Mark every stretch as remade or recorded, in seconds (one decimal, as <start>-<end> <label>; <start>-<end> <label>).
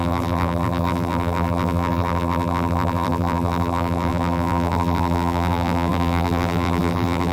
0.0-7.3 remade